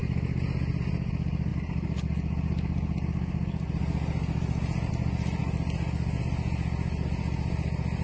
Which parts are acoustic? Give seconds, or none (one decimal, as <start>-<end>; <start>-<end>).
0.0-8.0